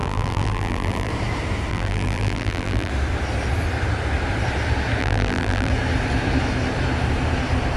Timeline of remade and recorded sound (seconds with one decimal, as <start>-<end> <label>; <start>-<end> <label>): 0.0-1.1 remade; 1.1-1.7 recorded; 1.7-2.9 remade; 2.9-5.0 recorded; 5.0-5.7 remade; 5.7-7.8 recorded